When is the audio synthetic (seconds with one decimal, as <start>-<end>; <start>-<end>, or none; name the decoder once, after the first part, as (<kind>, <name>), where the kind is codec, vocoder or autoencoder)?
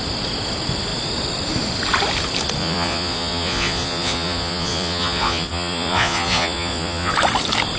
2.6-7.1 (vocoder, Vocos)